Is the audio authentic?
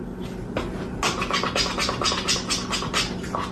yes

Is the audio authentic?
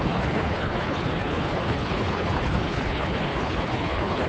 no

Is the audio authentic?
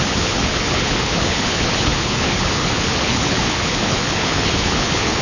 no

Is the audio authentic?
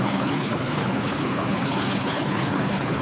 no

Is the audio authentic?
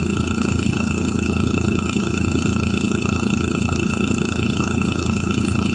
no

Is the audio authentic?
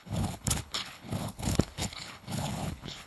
no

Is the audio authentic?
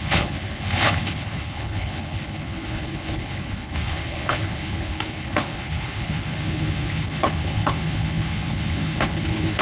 no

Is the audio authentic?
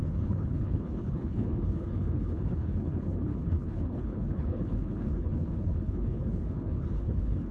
no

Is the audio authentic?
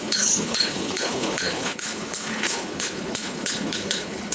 no